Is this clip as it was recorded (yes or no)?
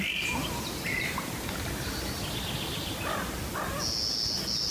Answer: yes